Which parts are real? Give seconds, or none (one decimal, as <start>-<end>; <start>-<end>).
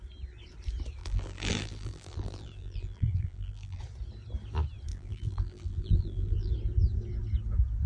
0.0-1.0; 3.8-4.9; 6.5-7.9